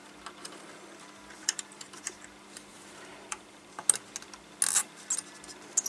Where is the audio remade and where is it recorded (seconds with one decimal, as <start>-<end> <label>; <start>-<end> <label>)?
0.0-1.4 recorded; 1.4-2.0 remade; 2.0-2.7 recorded; 2.7-3.8 remade; 3.8-5.9 recorded